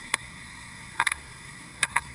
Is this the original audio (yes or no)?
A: no